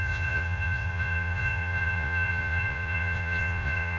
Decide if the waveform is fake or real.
fake